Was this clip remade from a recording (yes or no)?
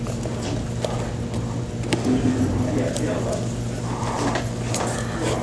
no